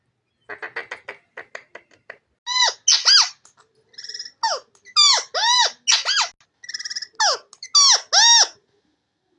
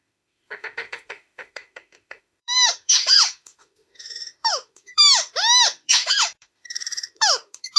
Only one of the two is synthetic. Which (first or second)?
second